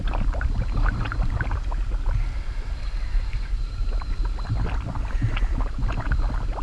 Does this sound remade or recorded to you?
recorded